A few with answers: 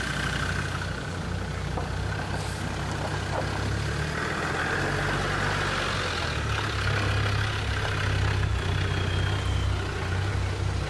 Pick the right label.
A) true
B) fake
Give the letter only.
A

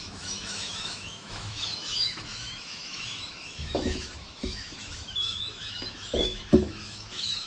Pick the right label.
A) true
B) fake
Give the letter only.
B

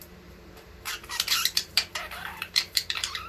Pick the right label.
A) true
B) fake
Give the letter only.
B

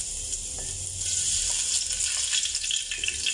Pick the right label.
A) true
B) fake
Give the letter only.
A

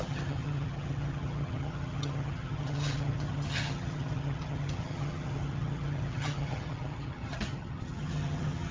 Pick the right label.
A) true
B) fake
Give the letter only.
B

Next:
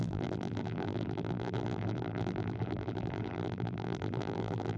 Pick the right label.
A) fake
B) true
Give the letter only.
A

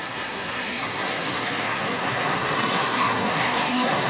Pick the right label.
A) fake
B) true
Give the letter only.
A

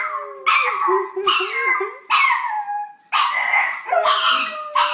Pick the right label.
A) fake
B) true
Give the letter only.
B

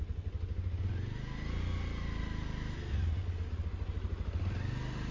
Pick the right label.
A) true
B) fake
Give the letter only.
A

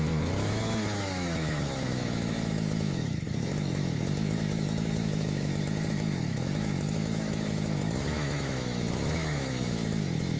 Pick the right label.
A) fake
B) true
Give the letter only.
A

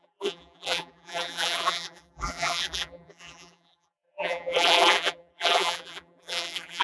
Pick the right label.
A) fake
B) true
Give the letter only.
A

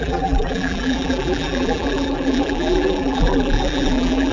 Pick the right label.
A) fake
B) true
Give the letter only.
A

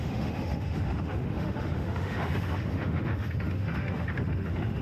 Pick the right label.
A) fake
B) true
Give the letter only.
A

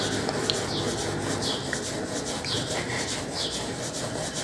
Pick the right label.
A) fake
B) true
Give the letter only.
B